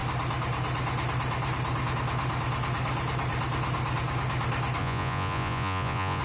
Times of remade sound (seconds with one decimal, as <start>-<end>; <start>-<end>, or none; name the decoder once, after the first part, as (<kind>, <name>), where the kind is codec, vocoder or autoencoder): 4.8-6.2 (vocoder, Vocos)